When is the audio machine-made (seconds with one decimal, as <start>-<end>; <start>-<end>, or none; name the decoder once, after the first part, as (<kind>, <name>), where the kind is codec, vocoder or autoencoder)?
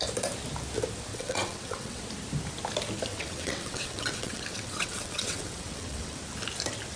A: 1.1-2.0 (vocoder, WaveNeXt); 3.1-6.2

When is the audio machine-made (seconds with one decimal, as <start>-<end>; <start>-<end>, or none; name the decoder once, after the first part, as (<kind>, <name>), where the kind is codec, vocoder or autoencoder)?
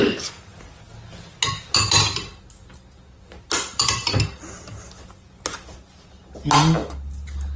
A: none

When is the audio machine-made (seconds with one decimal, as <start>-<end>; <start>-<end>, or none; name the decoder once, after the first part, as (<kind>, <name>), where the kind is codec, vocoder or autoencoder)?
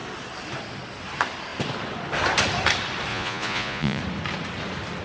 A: 3.1-4.0 (vocoder, Vocos)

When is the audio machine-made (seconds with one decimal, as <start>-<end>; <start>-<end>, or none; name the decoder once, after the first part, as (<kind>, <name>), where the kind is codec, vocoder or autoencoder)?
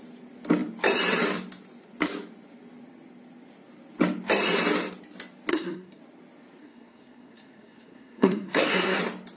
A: 5.5-6.0 (codec, SNAC); 6.6-9.0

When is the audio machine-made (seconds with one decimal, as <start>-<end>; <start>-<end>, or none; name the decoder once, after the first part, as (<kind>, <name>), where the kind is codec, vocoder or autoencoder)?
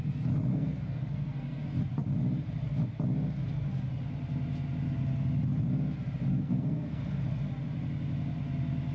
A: 0.5-1.6 (codec, SNAC); 6.3-7.0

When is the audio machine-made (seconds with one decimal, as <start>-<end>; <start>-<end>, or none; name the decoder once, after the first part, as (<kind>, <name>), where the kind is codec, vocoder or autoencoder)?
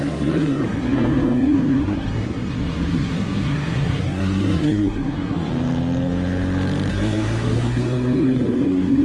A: 0.0-5.5 (codec, SNAC); 6.9-9.0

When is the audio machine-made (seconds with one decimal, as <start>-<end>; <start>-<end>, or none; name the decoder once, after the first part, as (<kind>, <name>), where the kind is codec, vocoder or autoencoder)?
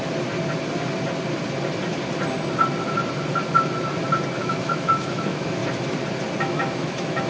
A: 4.4-5.6 (autoencoder, DAC-VAE); 6.4-7.3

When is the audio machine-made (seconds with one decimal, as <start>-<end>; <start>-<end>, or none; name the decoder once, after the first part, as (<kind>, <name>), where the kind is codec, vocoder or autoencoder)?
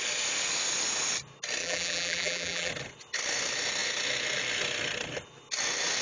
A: 1.6-2.7 (vocoder, BigVGAN v2)